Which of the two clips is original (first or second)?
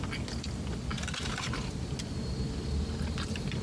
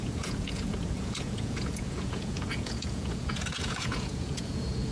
first